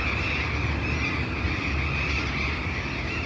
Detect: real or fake real